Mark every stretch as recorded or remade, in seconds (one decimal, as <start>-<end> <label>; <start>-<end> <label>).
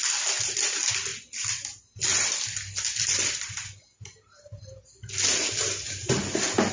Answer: 0.0-6.7 recorded